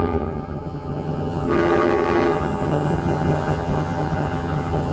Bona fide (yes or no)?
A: no